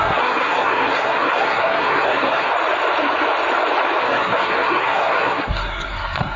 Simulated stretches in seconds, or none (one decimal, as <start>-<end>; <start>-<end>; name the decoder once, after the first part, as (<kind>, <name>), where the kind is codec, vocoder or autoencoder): 0.0-2.5 (codec, SNAC); 4.0-6.4